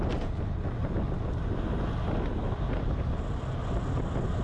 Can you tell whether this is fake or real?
real